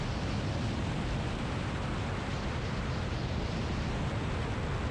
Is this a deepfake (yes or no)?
no